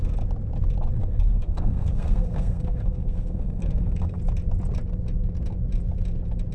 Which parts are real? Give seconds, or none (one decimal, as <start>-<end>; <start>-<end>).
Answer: 0.0-1.0; 4.2-6.5

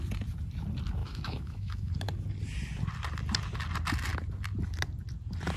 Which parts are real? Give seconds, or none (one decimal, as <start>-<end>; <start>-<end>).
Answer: 0.0-1.0; 1.9-5.6

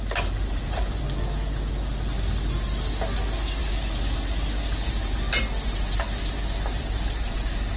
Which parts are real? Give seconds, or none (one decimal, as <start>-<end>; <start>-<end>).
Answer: 1.0-3.6

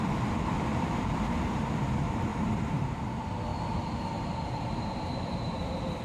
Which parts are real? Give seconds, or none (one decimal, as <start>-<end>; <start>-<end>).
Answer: 0.0-0.7; 1.6-2.3; 3.0-3.5; 5.3-6.0

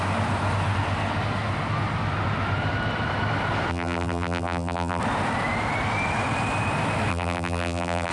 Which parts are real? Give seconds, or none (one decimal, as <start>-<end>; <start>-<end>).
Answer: 0.0-3.7; 5.0-7.1

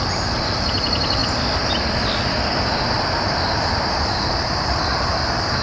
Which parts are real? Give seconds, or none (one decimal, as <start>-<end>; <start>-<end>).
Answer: 1.2-3.1